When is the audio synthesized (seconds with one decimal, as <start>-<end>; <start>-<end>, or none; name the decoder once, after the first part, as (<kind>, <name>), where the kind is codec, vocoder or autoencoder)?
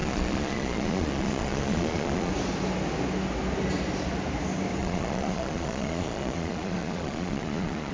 0.0-2.3 (vocoder, Vocos); 4.8-7.9